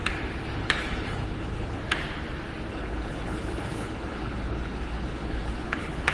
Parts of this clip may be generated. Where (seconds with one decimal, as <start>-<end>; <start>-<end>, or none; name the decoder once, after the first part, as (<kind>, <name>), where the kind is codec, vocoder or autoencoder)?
0.6-1.8 (codec, HILCodec); 2.7-6.1